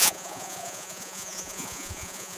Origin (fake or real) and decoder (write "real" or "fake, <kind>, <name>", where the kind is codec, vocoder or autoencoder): fake, vocoder, Vocos